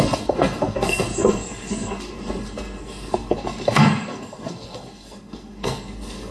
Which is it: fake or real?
fake